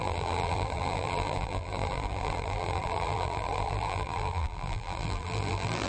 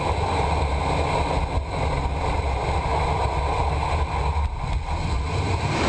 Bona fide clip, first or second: second